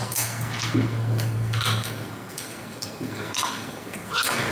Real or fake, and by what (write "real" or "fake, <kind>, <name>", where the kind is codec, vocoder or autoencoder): fake, codec, SNAC